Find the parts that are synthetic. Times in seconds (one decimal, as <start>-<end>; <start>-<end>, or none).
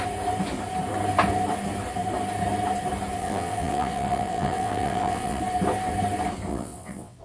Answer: 3.2-5.4; 6.5-7.2